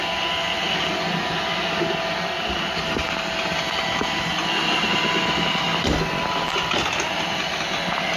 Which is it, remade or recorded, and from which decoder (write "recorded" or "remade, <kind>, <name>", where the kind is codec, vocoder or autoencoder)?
recorded